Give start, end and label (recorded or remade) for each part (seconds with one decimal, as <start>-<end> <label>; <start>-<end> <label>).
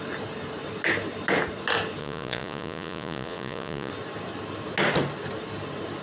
0.0-2.0 recorded; 2.0-3.9 remade; 3.9-6.0 recorded